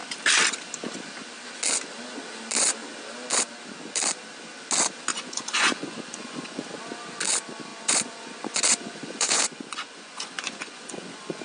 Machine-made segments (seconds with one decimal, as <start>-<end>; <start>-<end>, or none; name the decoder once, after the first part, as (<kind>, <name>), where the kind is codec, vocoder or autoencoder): 5.1-6.6 (vocoder, Vocos); 7.7-11.4